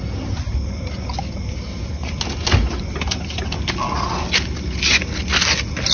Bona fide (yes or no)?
yes